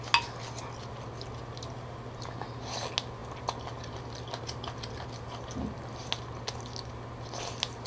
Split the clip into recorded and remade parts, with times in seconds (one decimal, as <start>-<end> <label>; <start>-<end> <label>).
0.0-7.9 recorded